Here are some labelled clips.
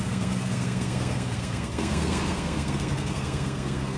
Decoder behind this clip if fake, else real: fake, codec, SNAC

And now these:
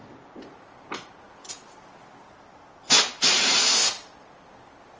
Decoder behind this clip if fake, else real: real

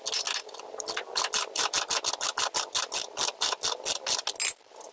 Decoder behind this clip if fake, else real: real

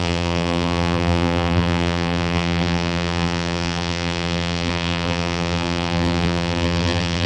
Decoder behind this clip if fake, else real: fake, vocoder, BigVGAN v2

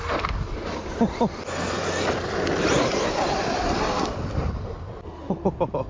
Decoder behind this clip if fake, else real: real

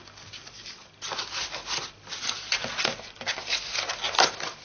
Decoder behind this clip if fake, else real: real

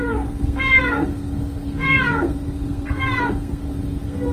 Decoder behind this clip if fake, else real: fake, codec, SNAC